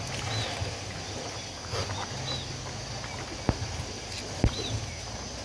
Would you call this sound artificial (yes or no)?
no